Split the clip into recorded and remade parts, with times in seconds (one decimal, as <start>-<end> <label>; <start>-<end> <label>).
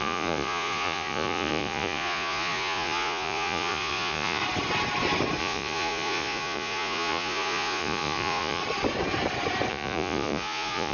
0.0-4.4 remade; 4.4-5.4 recorded; 5.4-8.6 remade; 8.6-9.7 recorded; 9.7-10.9 remade